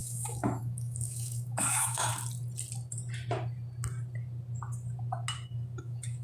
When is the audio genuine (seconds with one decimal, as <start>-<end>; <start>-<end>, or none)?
2.1-5.8